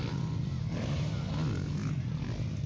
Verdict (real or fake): real